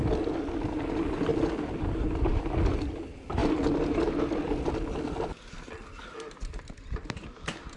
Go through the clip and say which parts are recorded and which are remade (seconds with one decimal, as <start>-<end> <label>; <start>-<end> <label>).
0.0-7.8 recorded